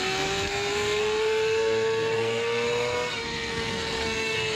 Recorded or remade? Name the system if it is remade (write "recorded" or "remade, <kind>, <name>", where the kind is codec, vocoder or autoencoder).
remade, codec, SNAC